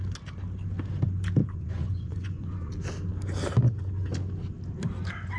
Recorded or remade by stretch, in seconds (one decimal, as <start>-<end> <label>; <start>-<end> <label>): 0.0-1.4 recorded; 1.4-2.7 remade; 2.7-5.4 recorded